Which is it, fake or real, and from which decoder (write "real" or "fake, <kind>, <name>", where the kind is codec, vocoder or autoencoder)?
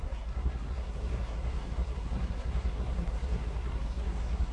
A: fake, codec, SNAC